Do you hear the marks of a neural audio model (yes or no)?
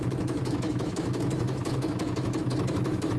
yes